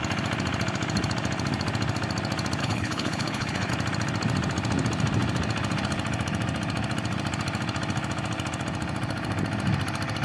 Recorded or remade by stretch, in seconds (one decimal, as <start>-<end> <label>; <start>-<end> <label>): 0.0-2.6 recorded; 2.6-3.7 remade; 3.7-10.2 recorded